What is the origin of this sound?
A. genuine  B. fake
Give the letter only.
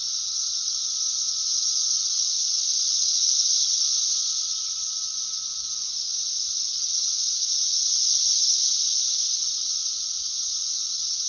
A